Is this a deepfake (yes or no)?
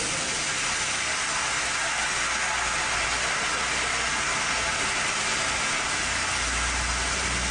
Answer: no